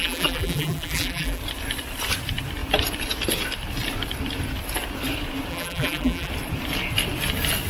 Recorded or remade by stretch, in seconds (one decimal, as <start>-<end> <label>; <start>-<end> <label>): 0.0-1.4 remade; 1.4-5.5 recorded; 5.5-6.3 remade; 6.3-7.7 recorded